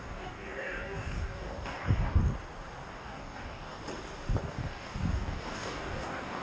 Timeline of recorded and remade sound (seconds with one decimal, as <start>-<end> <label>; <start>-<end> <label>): 0.0-2.2 remade; 2.2-2.9 recorded; 2.9-3.8 remade; 3.8-4.4 recorded; 4.4-6.4 remade